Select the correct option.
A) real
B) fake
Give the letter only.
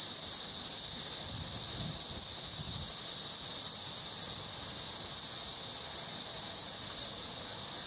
A